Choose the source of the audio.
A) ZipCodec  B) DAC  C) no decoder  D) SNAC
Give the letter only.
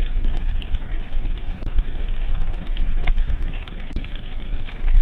B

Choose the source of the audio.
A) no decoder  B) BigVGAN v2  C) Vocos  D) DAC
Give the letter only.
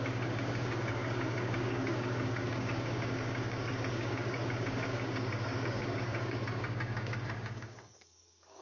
D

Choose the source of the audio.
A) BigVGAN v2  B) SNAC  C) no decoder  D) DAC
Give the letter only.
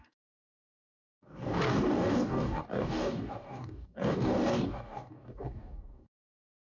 D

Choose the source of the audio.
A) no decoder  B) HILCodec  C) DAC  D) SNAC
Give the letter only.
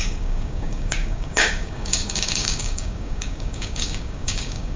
C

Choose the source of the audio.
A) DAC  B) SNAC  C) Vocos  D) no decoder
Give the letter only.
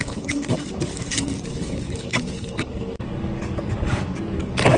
A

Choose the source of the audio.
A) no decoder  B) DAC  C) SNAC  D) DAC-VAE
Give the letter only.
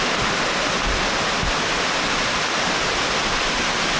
A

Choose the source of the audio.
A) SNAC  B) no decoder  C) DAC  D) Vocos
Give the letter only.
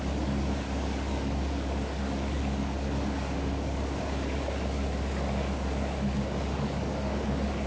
C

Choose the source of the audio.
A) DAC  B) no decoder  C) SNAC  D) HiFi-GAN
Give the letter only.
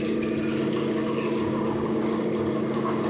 A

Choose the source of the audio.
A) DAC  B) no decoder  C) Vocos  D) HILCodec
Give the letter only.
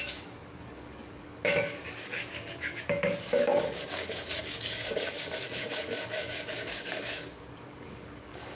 A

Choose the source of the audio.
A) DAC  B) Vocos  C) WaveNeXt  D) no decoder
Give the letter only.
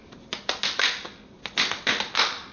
D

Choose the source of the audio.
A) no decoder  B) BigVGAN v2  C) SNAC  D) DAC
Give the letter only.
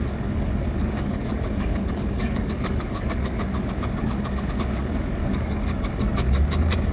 D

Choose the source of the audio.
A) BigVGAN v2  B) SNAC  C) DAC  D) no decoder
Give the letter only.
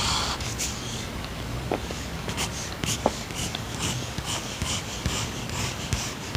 C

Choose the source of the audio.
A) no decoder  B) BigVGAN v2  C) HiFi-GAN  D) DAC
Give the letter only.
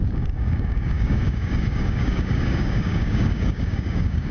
D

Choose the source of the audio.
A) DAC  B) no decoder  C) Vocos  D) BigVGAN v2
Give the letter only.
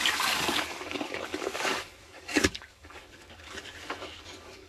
A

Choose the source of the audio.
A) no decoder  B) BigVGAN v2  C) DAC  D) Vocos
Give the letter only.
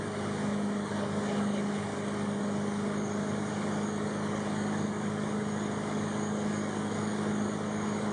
C